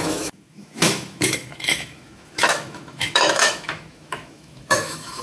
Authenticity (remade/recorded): remade